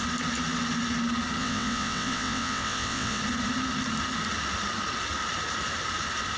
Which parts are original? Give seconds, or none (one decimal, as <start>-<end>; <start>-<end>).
0.0-1.4; 3.2-6.4